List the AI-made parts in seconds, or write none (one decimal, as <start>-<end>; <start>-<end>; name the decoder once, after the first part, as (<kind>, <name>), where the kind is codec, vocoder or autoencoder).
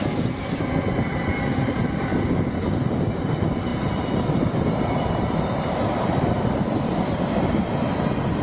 none